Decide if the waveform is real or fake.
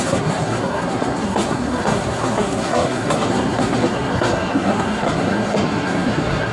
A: fake